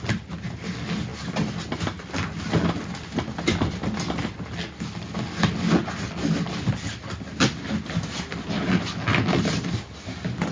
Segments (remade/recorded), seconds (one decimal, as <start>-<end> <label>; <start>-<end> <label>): 0.0-10.5 recorded